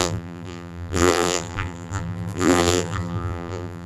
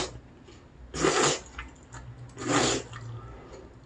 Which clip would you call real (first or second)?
second